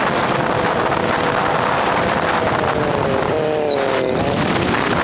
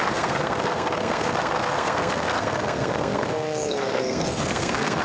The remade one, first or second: second